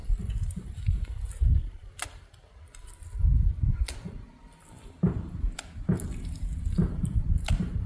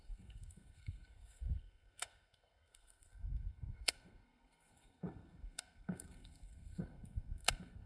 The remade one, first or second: second